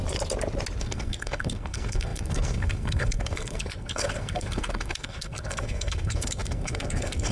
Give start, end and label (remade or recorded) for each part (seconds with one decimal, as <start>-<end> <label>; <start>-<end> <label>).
0.0-0.8 recorded; 0.8-7.3 remade